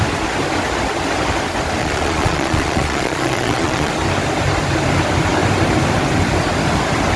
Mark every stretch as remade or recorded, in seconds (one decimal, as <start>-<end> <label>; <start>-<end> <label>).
0.0-1.8 recorded; 1.8-3.9 remade; 3.9-7.2 recorded